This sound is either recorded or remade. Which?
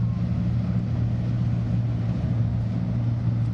recorded